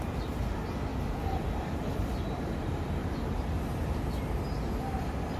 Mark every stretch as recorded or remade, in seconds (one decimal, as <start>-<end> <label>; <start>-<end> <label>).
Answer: 0.0-0.9 recorded; 0.9-4.1 remade; 4.1-5.4 recorded